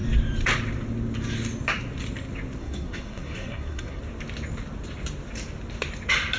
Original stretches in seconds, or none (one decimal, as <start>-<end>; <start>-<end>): 0.0-2.6; 4.0-6.4